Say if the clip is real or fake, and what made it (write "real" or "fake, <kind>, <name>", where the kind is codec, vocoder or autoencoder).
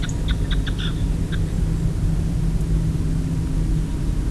real